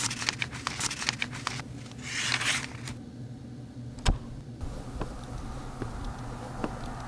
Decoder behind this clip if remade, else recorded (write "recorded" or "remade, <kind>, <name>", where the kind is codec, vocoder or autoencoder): recorded